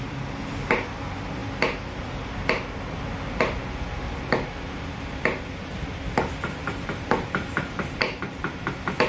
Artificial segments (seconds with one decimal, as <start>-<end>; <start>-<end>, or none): 6.6-8.4